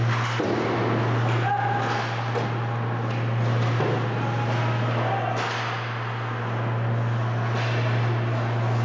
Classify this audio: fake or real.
real